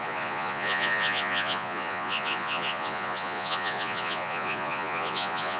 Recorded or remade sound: remade